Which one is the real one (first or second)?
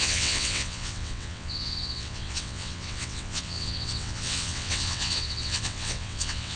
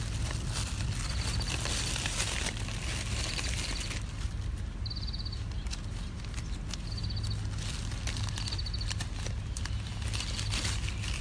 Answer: second